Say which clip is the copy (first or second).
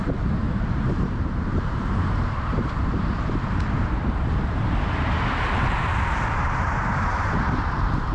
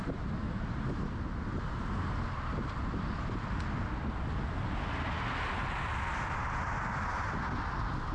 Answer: first